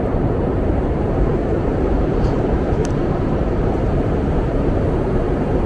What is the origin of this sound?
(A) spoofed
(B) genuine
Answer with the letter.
A